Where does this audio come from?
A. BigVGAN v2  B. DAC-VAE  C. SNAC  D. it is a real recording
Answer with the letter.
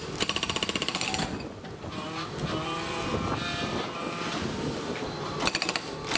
D